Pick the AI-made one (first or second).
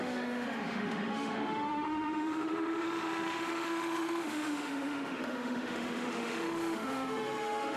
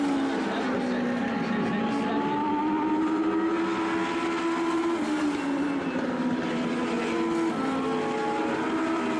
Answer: first